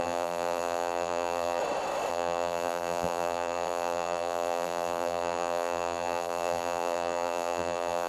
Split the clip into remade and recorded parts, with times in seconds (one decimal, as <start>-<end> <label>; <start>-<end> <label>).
0.0-1.6 remade; 1.6-2.1 recorded; 2.1-8.1 remade